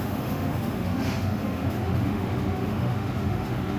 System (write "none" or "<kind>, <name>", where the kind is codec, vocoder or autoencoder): autoencoder, DAC-VAE